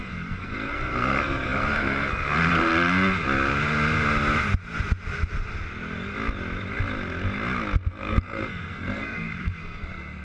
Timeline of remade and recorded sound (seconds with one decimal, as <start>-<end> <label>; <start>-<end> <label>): 0.0-2.7 remade; 2.7-7.9 recorded; 7.9-10.2 remade